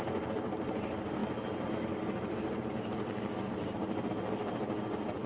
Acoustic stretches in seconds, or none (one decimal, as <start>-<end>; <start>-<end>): 0.0-5.3